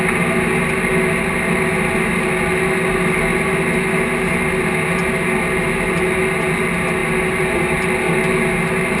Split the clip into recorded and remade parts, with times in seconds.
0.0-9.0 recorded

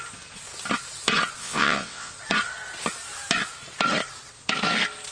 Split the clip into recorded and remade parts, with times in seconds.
0.0-1.4 recorded; 1.4-2.1 remade; 2.1-5.1 recorded

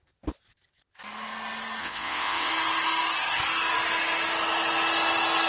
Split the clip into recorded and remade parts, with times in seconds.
0.0-1.8 recorded; 1.8-2.5 remade; 2.5-5.5 recorded

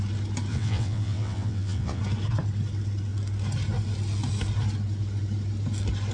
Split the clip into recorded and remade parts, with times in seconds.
0.0-0.5 recorded; 0.5-2.0 remade; 2.0-6.1 recorded

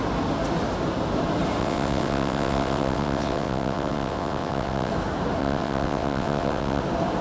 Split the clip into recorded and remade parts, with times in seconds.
0.0-1.6 recorded; 1.6-4.9 remade; 4.9-5.4 recorded; 5.4-6.8 remade; 6.8-7.2 recorded

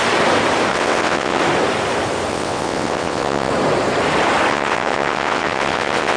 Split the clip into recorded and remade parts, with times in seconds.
0.0-0.7 recorded; 0.7-1.4 remade; 1.4-2.3 recorded; 2.3-3.5 remade; 3.5-4.5 recorded; 4.5-6.2 remade